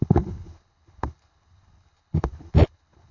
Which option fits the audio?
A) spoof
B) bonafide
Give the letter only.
A